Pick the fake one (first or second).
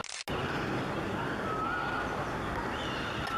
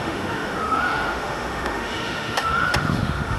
second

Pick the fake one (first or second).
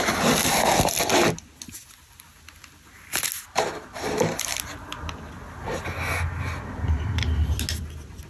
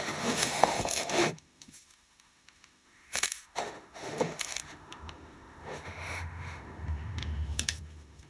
second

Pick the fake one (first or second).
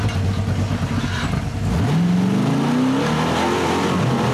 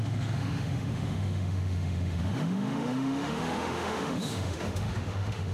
second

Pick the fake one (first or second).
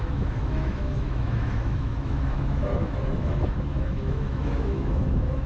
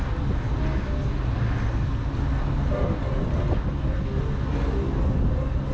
first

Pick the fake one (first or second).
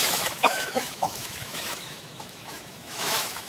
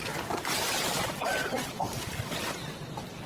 first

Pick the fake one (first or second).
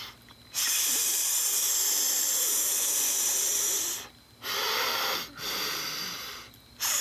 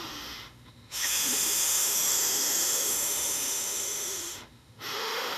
second